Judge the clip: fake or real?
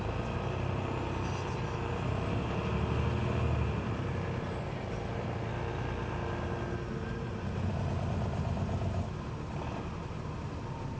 real